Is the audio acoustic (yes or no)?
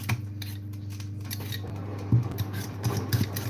yes